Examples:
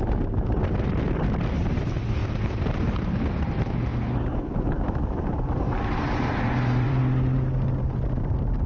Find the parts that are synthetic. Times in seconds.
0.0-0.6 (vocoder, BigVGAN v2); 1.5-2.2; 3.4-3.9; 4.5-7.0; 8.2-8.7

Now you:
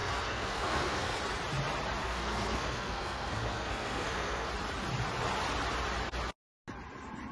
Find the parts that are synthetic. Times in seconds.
0.0-1.2 (codec, SNAC); 2.0-4.5